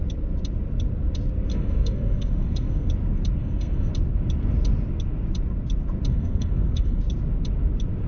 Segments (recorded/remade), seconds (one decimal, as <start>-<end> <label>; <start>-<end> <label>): 0.0-1.5 recorded; 1.5-2.9 remade; 2.9-3.4 recorded; 3.4-3.9 remade; 3.9-6.1 recorded; 6.1-7.0 remade; 7.0-8.1 recorded